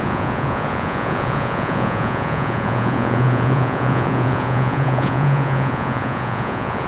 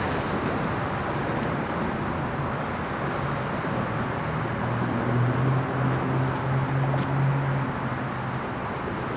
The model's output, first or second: first